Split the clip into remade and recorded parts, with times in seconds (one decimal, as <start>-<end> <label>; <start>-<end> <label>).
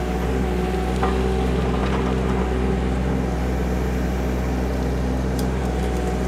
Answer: 0.0-6.3 recorded